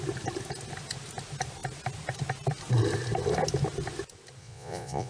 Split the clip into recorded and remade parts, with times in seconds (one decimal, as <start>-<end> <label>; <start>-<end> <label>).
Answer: 0.0-4.4 recorded; 4.4-5.1 remade